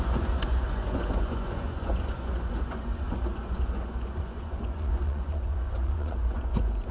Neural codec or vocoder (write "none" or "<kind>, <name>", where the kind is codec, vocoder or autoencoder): vocoder, Vocos